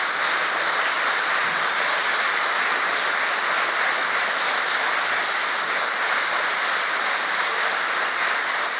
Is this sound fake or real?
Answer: fake